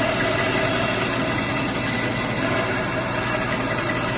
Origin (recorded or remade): recorded